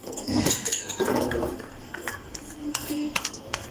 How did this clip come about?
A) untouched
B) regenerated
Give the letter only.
B